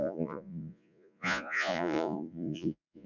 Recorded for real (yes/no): no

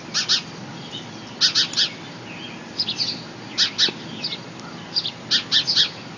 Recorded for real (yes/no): yes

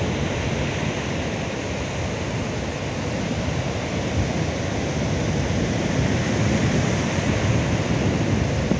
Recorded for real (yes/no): yes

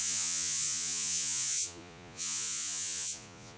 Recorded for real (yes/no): no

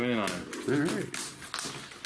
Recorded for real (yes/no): yes